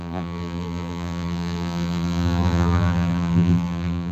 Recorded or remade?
remade